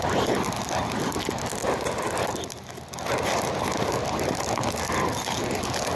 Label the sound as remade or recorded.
recorded